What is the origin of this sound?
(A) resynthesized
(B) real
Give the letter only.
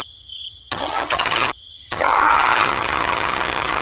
A